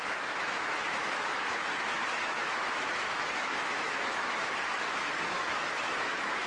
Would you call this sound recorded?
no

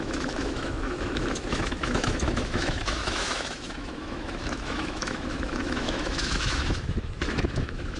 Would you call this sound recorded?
no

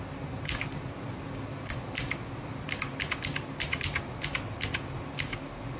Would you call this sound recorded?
yes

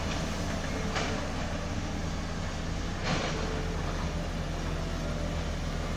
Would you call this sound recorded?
yes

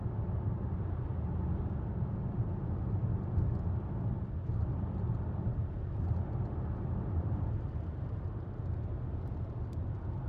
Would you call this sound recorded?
yes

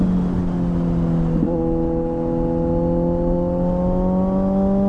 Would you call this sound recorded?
yes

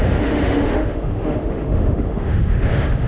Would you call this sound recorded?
no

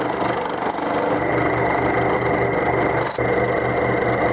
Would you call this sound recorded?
yes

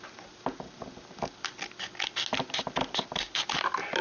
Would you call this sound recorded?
yes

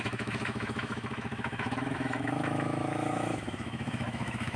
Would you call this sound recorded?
no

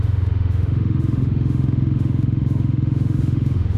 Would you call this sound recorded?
no